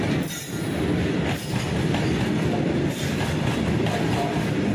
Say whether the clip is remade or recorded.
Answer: recorded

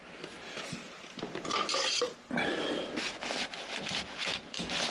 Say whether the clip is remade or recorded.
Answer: recorded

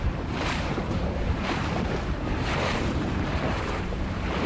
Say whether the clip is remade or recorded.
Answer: remade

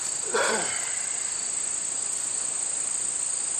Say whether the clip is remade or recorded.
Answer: recorded